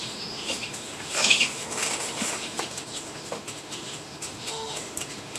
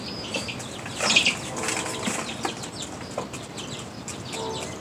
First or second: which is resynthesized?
first